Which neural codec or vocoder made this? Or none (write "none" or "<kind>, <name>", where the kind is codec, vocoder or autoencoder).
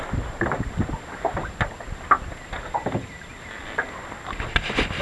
none